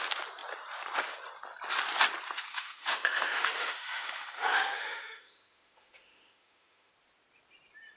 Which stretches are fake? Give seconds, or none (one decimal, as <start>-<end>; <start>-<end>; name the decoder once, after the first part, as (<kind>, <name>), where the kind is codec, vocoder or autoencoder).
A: 2.5-6.9 (autoencoder, DAC-VAE)